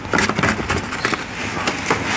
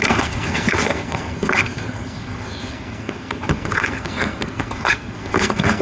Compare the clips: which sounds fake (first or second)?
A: second